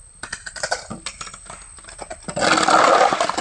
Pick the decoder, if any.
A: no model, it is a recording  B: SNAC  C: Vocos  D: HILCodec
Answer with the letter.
A